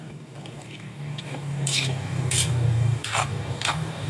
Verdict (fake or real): fake